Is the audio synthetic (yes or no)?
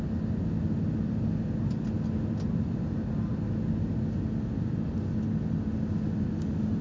no